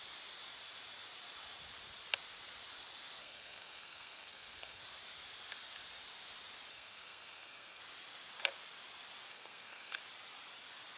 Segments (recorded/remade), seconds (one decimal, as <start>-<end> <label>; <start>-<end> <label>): 0.0-3.2 recorded; 3.2-4.8 remade; 4.8-6.7 recorded; 6.7-7.8 remade; 7.8-9.3 recorded; 9.3-10.0 remade; 10.0-11.0 recorded

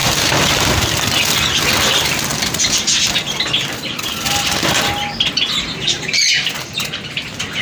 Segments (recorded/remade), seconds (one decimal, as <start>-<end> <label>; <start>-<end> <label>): 0.0-0.7 remade; 0.7-7.6 recorded

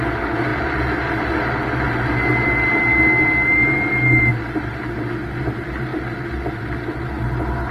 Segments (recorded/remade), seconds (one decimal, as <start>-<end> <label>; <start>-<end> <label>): 0.0-7.7 recorded

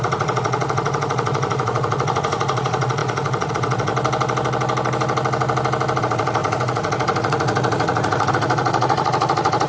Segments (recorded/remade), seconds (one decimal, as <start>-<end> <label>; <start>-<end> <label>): 0.0-3.9 remade; 3.9-6.0 recorded; 6.0-9.7 remade

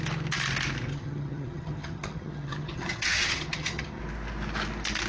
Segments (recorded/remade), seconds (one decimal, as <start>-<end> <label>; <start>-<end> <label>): 0.0-0.9 recorded; 0.9-4.0 remade; 4.0-5.1 recorded

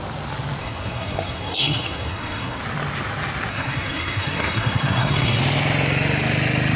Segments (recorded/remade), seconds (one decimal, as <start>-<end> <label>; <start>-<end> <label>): 0.0-0.6 recorded; 0.6-2.6 remade; 2.6-3.5 recorded; 3.5-5.4 remade; 5.4-6.8 recorded

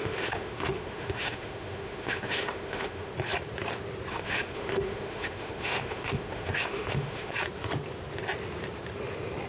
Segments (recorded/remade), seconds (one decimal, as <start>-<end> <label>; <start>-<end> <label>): 0.0-3.1 remade; 3.1-4.1 recorded; 4.1-7.3 remade; 7.3-9.5 recorded